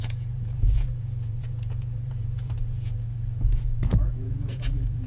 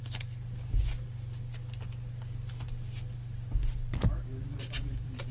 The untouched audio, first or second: second